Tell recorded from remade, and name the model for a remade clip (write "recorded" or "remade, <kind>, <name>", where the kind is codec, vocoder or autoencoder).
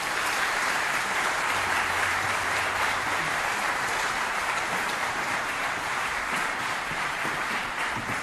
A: remade, vocoder, BigVGAN v2